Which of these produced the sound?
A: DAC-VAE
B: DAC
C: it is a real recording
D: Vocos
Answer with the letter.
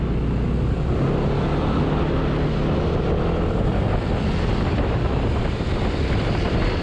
C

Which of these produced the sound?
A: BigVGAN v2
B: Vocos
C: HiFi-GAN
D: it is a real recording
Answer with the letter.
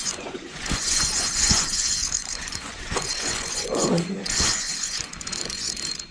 B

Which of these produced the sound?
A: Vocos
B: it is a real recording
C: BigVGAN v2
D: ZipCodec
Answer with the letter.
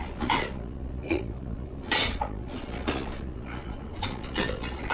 A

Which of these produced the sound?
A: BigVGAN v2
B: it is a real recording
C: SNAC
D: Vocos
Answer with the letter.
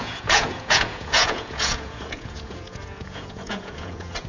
D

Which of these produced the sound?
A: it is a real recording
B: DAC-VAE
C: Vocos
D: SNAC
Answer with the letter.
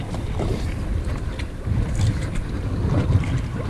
A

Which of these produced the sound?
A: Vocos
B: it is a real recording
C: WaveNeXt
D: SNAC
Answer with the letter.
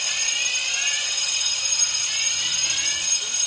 A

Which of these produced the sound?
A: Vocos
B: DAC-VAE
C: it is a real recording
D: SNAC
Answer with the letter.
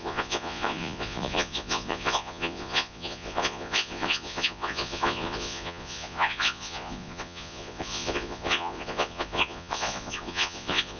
A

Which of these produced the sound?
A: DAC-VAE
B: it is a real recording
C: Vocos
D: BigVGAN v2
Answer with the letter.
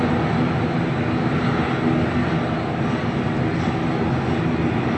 B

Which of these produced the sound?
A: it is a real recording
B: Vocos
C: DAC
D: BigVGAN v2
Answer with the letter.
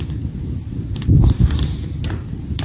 A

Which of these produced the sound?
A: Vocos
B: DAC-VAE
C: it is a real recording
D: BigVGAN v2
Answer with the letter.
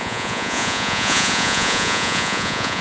A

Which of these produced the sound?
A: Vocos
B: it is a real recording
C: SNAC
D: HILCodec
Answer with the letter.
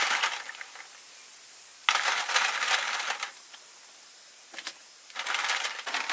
B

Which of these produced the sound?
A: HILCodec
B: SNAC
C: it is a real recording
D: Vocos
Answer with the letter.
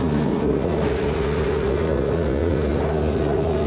D